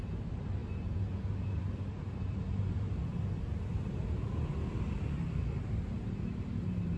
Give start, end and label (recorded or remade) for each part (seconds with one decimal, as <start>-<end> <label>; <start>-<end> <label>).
0.0-7.0 recorded